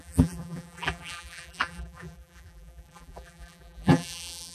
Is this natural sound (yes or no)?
no